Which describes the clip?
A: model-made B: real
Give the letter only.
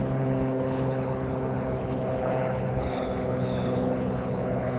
A